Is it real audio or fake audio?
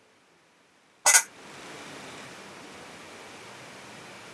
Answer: real